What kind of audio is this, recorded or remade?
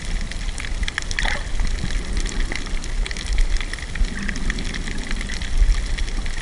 recorded